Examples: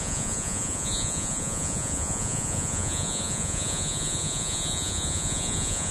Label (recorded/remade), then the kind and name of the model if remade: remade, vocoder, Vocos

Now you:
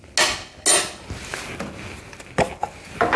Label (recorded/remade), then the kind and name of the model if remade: recorded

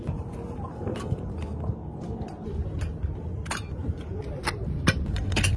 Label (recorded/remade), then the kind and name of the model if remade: recorded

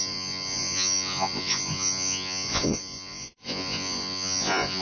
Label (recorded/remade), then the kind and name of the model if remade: remade, vocoder, Vocos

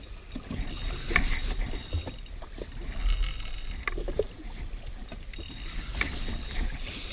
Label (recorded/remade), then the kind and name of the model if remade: recorded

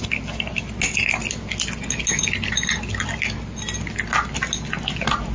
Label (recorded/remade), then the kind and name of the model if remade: recorded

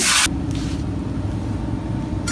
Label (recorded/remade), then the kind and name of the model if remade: recorded